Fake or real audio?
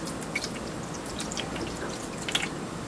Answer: real